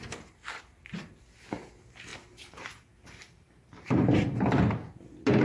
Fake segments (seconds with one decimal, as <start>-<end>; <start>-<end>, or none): 2.1-4.6